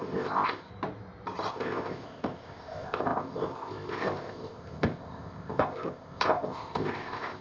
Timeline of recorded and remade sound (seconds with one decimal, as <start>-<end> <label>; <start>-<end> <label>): 0.0-0.7 remade; 0.7-1.5 recorded; 1.5-7.4 remade